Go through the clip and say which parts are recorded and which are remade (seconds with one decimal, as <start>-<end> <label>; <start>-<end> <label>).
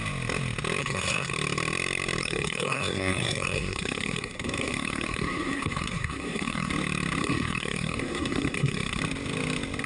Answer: 0.0-0.8 recorded; 0.8-1.3 remade; 1.3-2.2 recorded; 2.2-6.7 remade; 6.7-7.2 recorded; 7.2-9.0 remade; 9.0-9.9 recorded